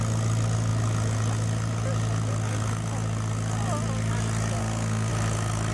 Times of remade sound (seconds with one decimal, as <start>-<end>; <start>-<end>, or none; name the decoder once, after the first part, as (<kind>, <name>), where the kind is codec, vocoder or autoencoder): 4.6-5.1 (codec, SNAC)